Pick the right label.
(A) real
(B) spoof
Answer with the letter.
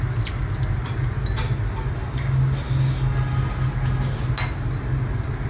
A